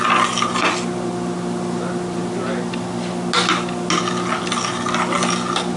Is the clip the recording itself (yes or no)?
yes